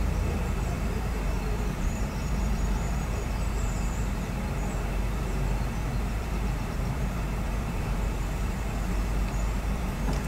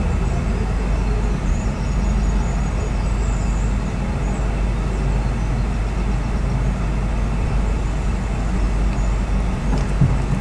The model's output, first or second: first